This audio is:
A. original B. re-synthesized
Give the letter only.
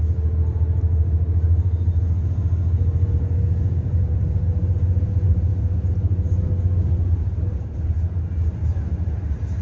A